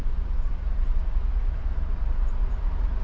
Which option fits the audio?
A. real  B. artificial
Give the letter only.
B